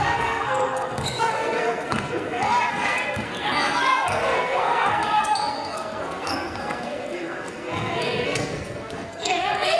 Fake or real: fake